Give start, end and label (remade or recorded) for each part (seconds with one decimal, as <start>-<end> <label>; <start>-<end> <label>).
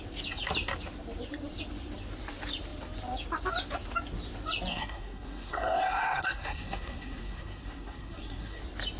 0.0-4.7 recorded; 4.7-8.6 remade; 8.6-9.0 recorded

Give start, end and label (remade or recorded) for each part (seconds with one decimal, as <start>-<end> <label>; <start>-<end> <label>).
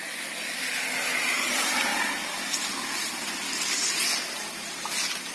0.0-5.3 recorded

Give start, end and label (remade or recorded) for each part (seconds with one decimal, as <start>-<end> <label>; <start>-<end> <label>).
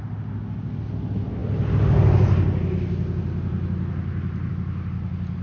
0.0-5.4 recorded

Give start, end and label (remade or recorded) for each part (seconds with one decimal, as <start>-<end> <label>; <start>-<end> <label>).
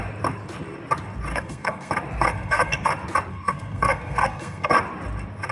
0.0-1.3 recorded; 1.3-1.9 remade; 1.9-2.3 recorded; 2.3-2.9 remade; 2.9-3.3 recorded; 3.3-4.7 remade; 4.7-5.5 recorded